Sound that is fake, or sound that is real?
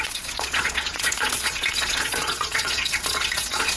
fake